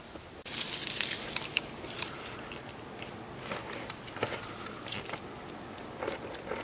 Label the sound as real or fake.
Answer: real